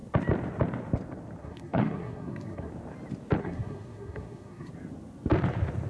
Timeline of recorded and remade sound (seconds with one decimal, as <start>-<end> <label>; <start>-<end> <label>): 0.0-1.4 recorded; 1.4-2.7 remade; 2.7-3.4 recorded; 3.4-4.7 remade; 4.7-5.9 recorded